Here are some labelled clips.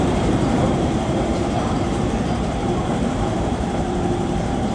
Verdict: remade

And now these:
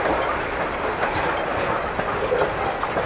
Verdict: recorded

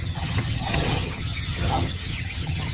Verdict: remade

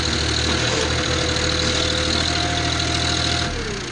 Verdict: recorded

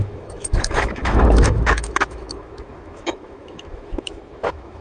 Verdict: remade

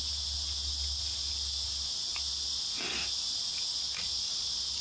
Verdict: recorded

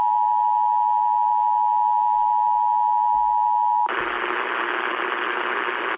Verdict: recorded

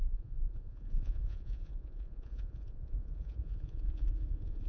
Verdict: remade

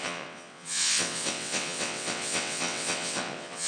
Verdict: remade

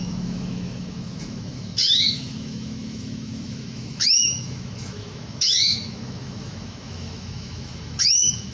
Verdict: remade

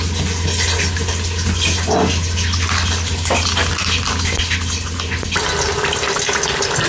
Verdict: recorded